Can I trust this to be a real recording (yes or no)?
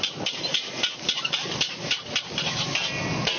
yes